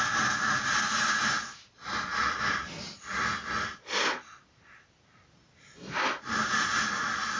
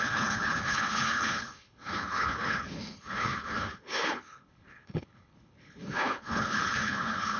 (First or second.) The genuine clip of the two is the first